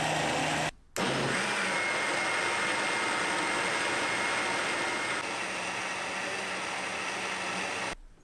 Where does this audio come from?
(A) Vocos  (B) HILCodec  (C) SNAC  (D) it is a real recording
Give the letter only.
D